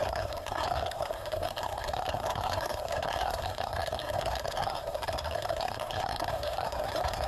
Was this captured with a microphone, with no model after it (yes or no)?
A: no